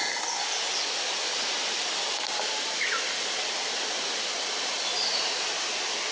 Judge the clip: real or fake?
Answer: real